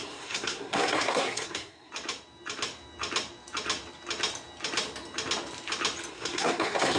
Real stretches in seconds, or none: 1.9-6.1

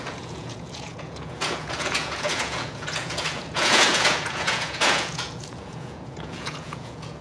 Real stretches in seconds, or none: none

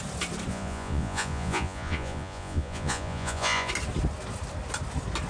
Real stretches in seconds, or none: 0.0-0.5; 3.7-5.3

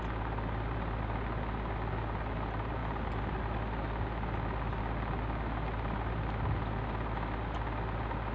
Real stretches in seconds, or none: 0.0-8.3

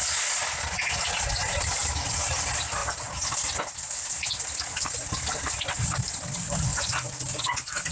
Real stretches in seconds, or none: 0.0-7.9

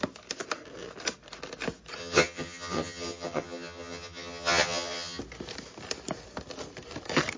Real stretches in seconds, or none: 0.0-2.0; 5.2-7.4

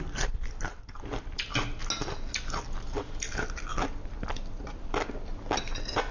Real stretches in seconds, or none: 0.0-6.1